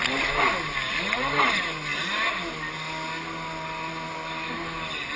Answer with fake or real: real